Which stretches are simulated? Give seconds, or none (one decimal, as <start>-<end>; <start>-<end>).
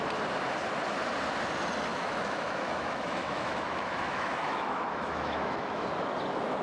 1.9-5.9